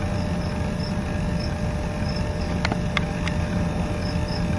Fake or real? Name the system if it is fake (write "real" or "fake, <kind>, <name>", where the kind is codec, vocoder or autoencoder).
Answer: real